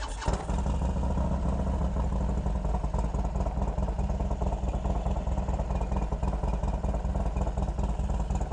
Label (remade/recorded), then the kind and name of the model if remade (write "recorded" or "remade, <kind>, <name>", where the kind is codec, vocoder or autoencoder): recorded